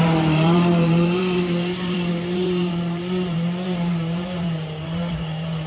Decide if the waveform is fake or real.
fake